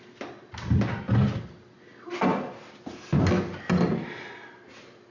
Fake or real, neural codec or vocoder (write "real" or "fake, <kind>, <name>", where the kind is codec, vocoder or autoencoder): real